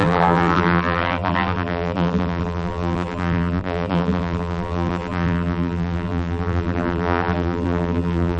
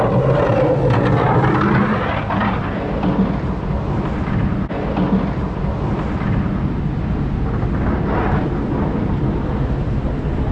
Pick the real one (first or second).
second